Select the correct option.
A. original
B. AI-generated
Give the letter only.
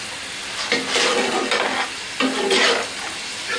A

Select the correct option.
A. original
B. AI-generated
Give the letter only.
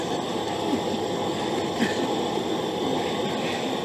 A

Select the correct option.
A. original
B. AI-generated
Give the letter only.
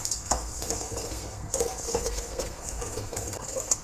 B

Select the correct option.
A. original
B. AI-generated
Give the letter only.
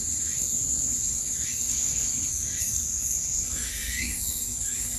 B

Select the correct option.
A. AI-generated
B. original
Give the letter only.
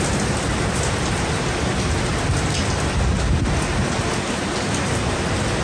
B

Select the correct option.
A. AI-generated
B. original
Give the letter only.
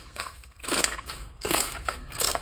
A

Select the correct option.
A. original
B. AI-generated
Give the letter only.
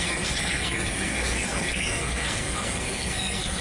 B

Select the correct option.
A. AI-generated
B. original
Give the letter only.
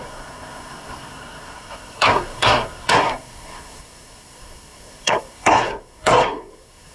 A